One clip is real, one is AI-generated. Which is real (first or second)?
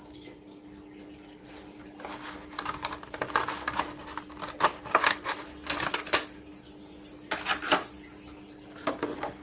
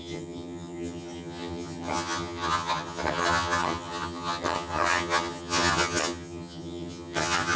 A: first